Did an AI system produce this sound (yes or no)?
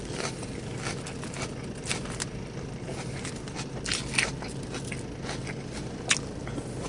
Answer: no